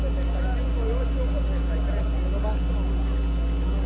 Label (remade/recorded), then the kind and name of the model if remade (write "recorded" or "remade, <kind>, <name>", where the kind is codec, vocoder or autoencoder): recorded